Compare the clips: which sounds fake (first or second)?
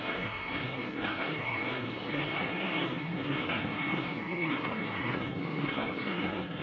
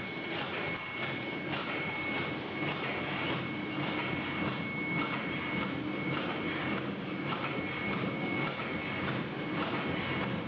first